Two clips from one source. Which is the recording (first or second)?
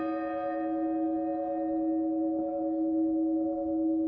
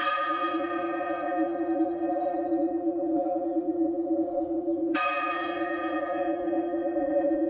first